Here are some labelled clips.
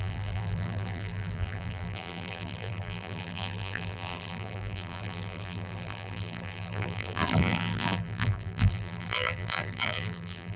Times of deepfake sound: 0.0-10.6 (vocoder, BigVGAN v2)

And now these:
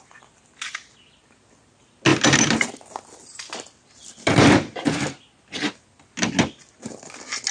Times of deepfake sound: none

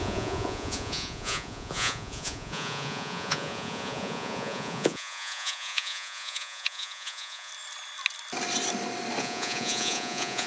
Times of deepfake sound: 0.0-7.5 (vocoder, Vocos); 9.2-10.5

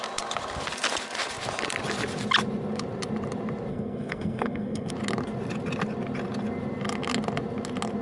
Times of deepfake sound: 3.7-4.9 (codec, SNAC)

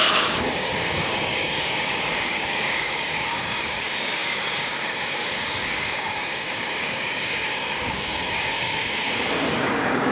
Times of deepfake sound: 0.0-10.1 (codec, DAC)